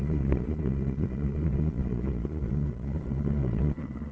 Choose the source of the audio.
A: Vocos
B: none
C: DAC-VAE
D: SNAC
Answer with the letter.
A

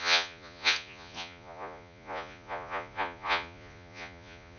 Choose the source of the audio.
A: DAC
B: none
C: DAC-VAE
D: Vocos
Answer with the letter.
D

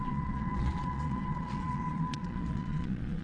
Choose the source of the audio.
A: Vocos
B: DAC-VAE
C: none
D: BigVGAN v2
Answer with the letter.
A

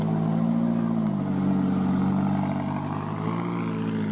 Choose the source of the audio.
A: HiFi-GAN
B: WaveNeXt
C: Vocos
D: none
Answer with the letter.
D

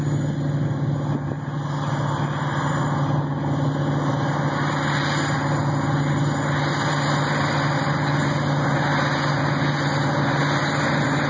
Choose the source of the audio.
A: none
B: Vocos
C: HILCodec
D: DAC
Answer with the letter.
A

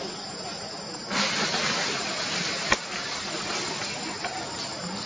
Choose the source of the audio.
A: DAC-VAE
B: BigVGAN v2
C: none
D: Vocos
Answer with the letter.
C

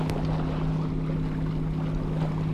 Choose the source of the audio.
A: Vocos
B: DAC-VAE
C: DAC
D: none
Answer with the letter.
D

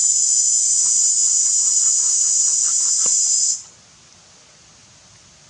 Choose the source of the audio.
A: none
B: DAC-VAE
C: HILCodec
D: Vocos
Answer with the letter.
A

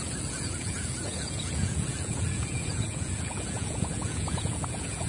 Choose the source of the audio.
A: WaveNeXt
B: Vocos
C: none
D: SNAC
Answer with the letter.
B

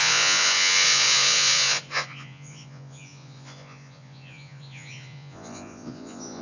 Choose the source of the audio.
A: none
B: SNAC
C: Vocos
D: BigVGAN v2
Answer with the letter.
C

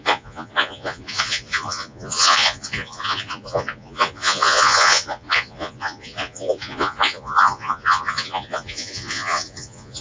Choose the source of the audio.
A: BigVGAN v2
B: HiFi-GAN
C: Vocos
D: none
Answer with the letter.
C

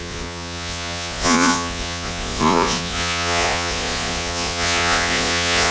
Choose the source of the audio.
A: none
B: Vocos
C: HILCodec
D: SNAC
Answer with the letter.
B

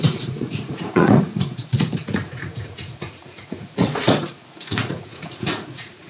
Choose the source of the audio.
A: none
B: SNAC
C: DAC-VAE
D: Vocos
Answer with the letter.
D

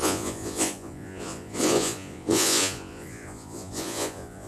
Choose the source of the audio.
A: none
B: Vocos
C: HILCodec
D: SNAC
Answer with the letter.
B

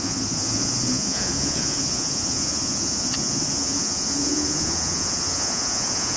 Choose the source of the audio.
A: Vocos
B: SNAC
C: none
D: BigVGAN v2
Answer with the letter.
A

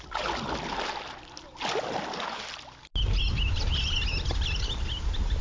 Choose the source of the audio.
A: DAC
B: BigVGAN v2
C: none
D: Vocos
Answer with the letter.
C